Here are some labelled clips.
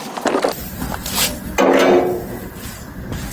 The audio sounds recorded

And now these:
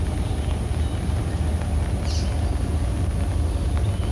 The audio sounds recorded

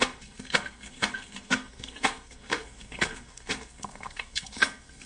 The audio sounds remade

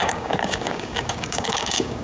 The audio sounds remade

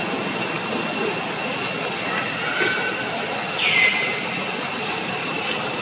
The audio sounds recorded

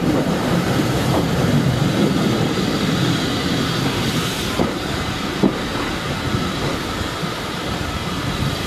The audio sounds remade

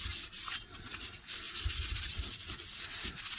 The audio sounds recorded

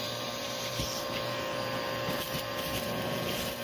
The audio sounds remade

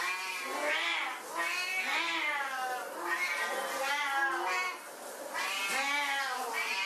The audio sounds recorded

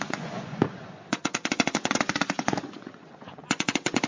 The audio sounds remade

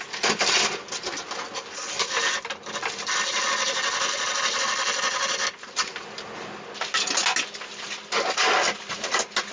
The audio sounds recorded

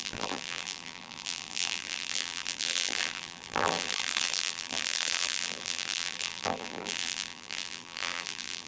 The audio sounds remade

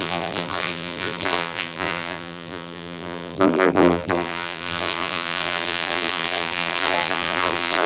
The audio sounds remade